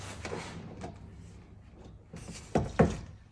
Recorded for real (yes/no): yes